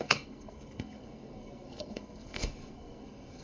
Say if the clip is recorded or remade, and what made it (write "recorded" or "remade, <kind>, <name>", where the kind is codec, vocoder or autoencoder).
remade, codec, SNAC